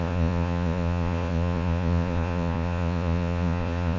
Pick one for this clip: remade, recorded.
remade